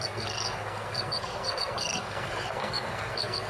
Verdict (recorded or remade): remade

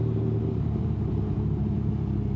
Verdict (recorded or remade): remade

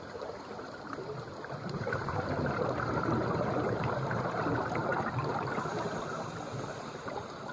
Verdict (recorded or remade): remade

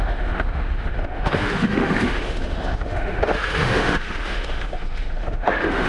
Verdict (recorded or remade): remade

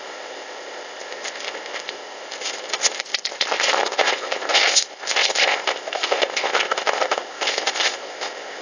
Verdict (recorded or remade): remade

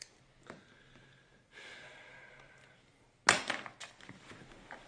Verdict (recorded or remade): recorded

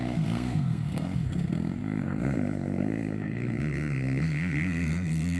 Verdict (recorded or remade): remade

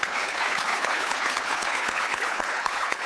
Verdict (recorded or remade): remade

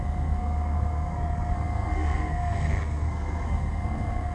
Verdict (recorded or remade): remade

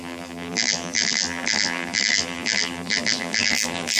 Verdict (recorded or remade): remade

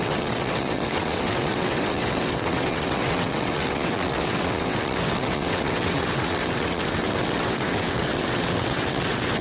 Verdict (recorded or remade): remade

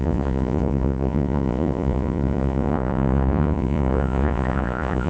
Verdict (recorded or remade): remade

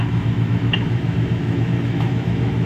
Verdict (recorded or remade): remade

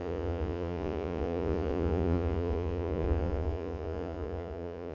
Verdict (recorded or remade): remade